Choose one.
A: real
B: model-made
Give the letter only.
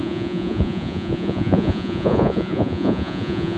B